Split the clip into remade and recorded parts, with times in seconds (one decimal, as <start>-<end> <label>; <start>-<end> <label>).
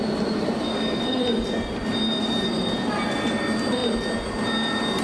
0.0-5.0 recorded